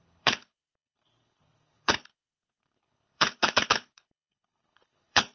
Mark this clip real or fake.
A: fake